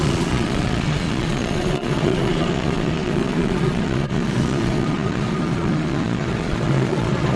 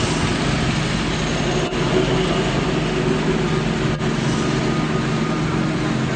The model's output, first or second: first